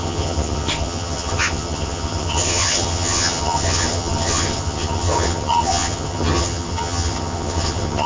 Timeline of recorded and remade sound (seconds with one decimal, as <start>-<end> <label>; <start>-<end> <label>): 0.0-8.1 remade